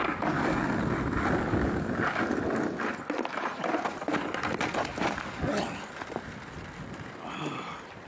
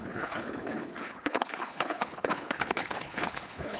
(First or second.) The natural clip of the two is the first